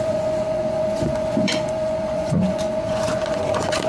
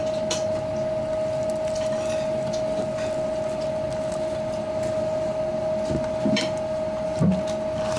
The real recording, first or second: second